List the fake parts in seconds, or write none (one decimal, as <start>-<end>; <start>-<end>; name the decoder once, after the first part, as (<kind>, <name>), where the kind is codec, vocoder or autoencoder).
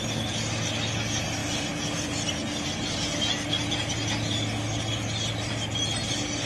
none